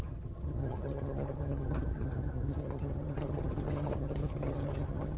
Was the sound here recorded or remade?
remade